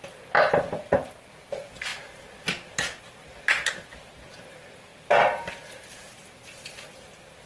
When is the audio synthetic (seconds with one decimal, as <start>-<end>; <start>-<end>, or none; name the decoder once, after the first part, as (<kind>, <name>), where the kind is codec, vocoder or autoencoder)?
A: none